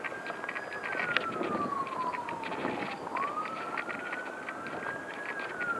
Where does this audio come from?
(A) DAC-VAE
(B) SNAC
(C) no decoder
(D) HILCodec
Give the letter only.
C